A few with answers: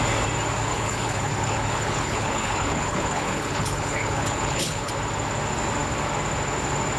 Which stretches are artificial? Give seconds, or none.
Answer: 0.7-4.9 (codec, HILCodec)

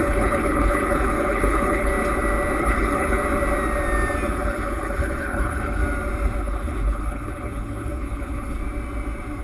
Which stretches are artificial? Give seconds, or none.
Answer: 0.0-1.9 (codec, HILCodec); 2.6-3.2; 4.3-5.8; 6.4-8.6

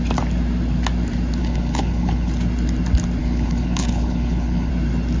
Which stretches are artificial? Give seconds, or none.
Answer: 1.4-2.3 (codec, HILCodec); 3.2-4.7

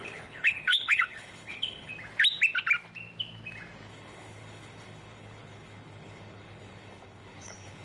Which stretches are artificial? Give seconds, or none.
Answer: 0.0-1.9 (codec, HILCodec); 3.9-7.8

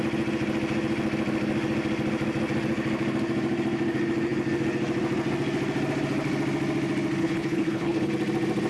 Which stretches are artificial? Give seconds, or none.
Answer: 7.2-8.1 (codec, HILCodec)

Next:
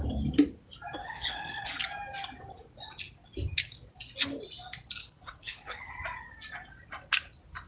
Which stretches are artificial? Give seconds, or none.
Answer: 1.0-1.7 (codec, HILCodec); 5.0-5.9